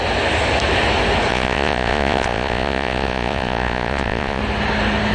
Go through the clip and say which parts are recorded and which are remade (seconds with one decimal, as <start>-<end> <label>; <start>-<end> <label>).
0.0-1.3 recorded; 1.3-4.4 remade; 4.4-5.1 recorded